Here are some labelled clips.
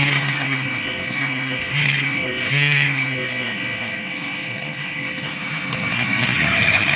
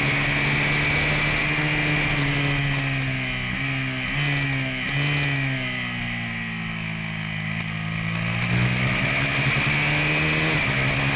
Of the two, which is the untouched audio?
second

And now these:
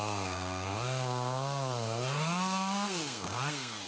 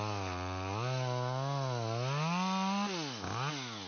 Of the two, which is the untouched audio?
second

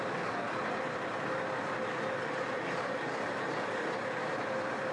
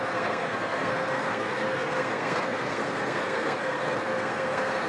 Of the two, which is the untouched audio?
first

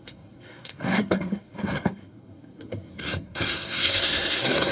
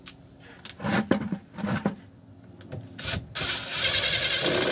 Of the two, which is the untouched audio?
second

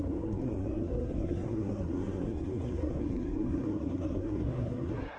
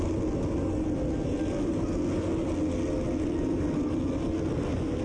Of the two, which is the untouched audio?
second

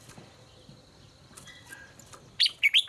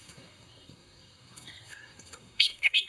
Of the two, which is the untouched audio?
first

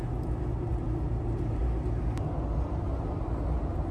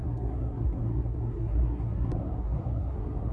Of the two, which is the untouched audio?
first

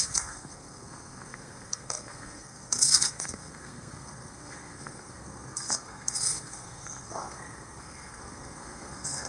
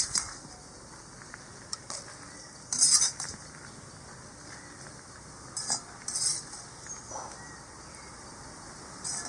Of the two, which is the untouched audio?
second